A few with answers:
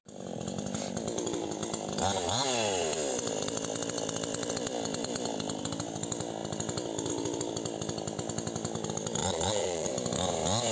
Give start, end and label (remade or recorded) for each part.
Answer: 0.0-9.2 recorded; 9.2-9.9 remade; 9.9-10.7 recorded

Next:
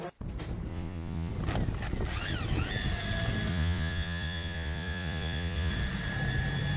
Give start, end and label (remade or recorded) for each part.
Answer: 0.0-0.7 recorded; 0.7-1.3 remade; 1.3-3.5 recorded; 3.5-5.7 remade; 5.7-6.8 recorded

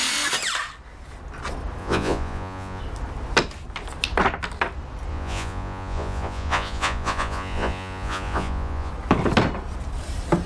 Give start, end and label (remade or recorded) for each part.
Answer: 0.0-1.8 recorded; 1.8-2.8 remade; 2.8-5.1 recorded; 5.1-8.9 remade; 8.9-10.5 recorded

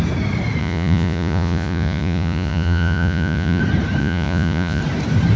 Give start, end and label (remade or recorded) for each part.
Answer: 0.0-0.6 recorded; 0.6-3.6 remade; 3.6-4.0 recorded; 4.0-4.8 remade; 4.8-5.4 recorded

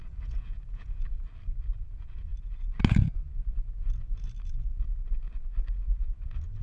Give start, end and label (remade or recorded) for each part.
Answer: 0.0-1.2 remade; 1.2-6.6 recorded